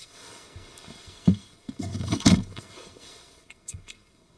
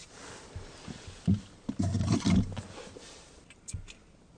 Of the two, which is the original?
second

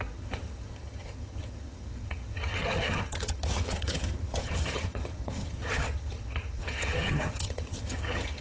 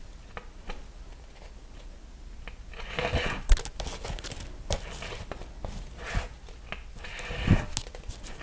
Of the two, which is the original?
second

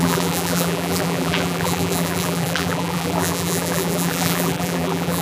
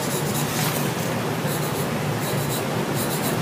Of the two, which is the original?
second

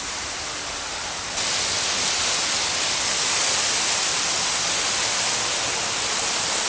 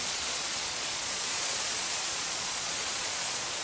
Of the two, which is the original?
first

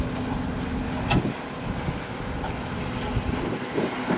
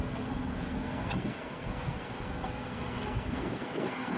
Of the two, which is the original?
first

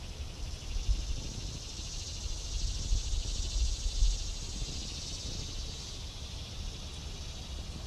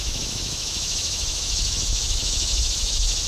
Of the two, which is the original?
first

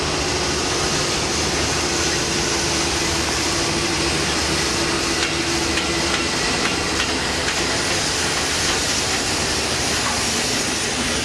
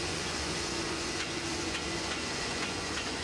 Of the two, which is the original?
first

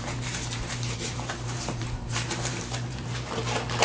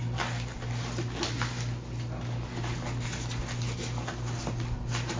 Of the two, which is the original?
second